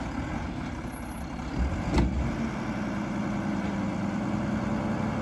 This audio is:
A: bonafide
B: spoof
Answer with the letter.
A